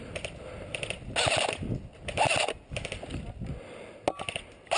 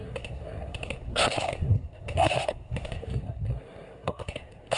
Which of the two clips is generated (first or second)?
second